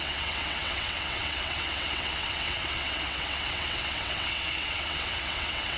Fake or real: fake